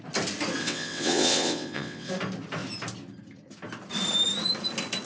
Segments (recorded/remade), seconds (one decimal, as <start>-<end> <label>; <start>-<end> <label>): 0.0-0.6 recorded; 0.6-2.1 remade; 2.1-5.1 recorded